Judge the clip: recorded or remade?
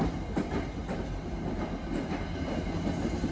recorded